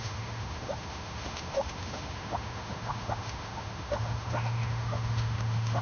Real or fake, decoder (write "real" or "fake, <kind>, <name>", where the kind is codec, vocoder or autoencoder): fake, autoencoder, DAC-VAE